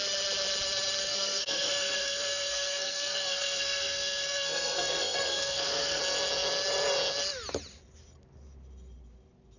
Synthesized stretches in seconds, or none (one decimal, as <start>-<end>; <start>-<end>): 1.0-6.0